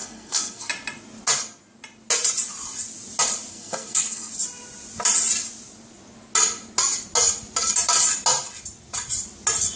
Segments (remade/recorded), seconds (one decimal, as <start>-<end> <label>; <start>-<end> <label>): 0.0-0.7 remade; 0.7-3.5 recorded; 3.5-4.3 remade; 4.3-9.8 recorded